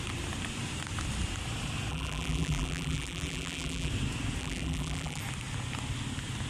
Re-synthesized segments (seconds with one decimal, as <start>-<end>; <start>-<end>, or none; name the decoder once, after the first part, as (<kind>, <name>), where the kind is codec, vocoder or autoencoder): 1.9-3.9 (vocoder, BigVGAN v2); 4.4-5.2